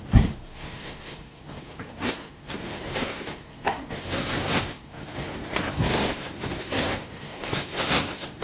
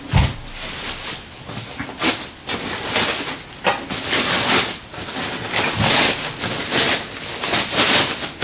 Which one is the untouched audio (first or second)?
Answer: second